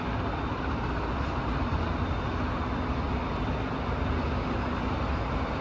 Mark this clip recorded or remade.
recorded